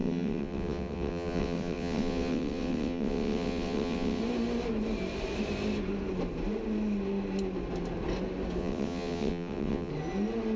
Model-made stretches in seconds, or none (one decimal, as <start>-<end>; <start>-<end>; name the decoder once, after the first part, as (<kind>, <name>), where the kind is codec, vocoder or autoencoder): 0.0-4.2 (vocoder, WaveNeXt); 8.6-9.9